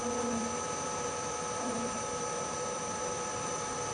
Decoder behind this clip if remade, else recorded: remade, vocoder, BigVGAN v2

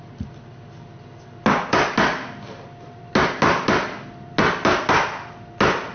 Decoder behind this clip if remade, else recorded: recorded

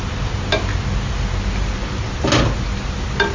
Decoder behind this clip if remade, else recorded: recorded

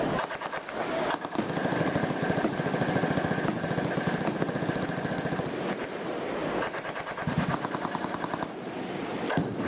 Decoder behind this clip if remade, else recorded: recorded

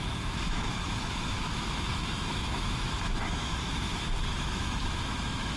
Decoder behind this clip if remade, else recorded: remade, autoencoder, DAC-VAE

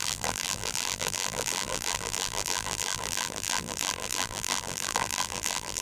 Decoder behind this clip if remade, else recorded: remade, vocoder, BigVGAN v2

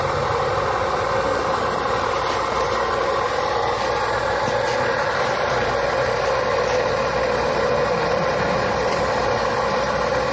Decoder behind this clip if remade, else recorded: recorded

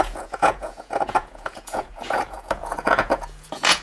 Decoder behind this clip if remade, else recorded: remade, vocoder, Vocos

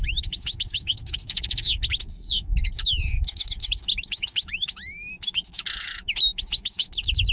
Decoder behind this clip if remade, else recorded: remade, autoencoder, DAC-VAE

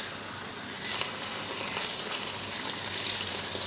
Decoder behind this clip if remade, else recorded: recorded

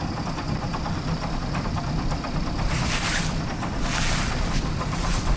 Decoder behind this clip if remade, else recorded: remade, vocoder, BigVGAN v2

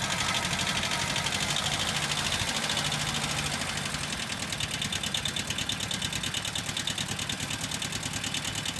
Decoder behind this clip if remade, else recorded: recorded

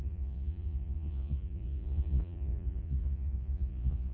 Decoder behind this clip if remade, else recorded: remade, vocoder, Vocos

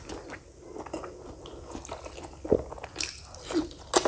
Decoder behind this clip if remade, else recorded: recorded